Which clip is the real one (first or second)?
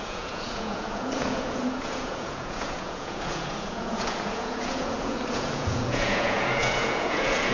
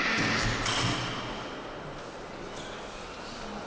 second